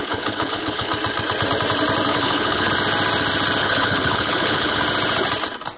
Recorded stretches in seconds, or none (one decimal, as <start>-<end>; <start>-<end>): 0.9-2.1; 2.7-3.6; 4.8-5.8